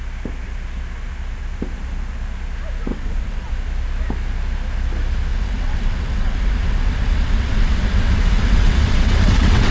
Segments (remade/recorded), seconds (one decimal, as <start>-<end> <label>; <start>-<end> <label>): 0.0-2.9 recorded; 2.9-3.5 remade; 3.5-5.3 recorded; 5.3-9.7 remade